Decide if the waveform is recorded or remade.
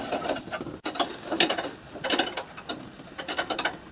recorded